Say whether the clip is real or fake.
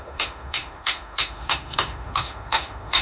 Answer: fake